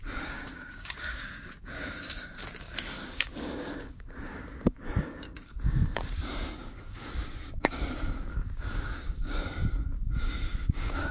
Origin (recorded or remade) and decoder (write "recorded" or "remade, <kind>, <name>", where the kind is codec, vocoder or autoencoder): remade, codec, DAC